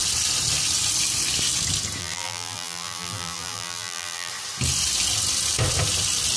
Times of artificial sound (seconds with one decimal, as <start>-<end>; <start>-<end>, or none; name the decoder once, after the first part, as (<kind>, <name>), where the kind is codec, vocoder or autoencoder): 2.0-4.3 (vocoder, BigVGAN v2)